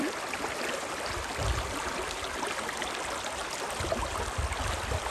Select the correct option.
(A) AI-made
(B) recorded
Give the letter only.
B